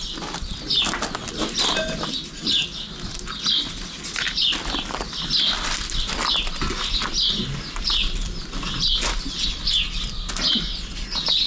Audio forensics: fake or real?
real